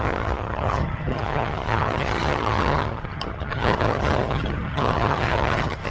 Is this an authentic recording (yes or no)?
no